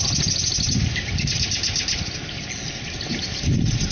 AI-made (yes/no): no